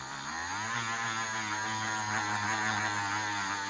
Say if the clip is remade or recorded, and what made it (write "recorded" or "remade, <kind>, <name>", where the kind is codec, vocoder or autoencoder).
recorded